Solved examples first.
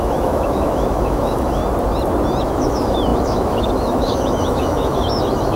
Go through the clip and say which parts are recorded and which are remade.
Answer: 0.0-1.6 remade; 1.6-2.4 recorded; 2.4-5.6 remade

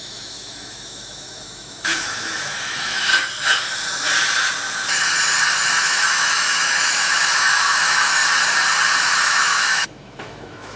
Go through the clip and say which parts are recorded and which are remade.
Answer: 0.0-3.1 remade; 3.1-5.8 recorded; 5.8-8.2 remade; 8.2-9.1 recorded; 9.1-10.8 remade

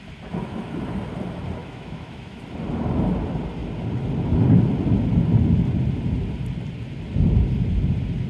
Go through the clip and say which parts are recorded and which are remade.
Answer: 0.0-1.6 recorded; 1.6-2.4 remade; 2.4-8.3 recorded

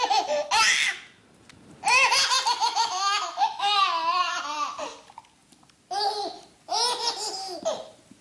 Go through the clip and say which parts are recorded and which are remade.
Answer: 0.0-2.6 recorded; 2.6-3.8 remade; 3.8-8.2 recorded

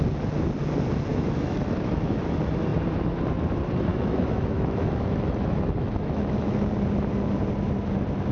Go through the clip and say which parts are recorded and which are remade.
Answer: 0.0-1.1 recorded; 1.1-2.2 remade; 2.2-3.9 recorded; 3.9-6.7 remade; 6.7-8.3 recorded

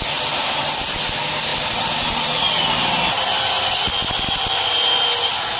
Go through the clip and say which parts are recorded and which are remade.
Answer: 0.0-5.6 recorded